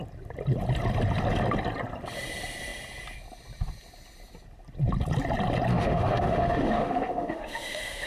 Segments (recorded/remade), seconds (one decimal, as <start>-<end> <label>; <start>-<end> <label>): 0.0-5.7 recorded; 5.7-8.1 remade